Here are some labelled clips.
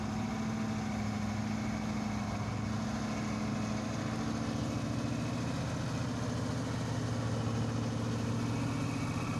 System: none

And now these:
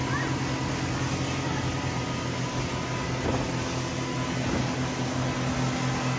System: none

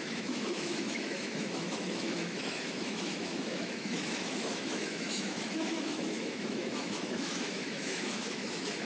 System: autoencoder, DAC-VAE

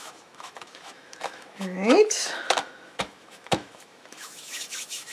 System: autoencoder, DAC-VAE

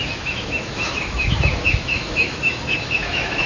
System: autoencoder, DAC-VAE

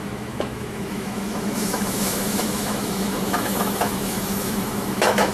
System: autoencoder, DAC-VAE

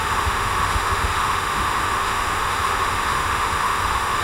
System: autoencoder, DAC-VAE